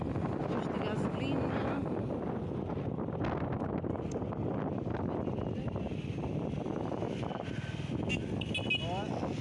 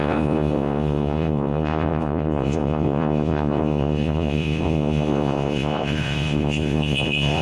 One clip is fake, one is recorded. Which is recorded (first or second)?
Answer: first